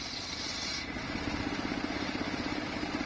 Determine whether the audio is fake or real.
real